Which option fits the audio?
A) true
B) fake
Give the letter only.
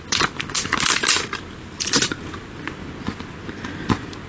A